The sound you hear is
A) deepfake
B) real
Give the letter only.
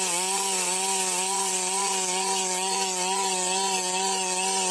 A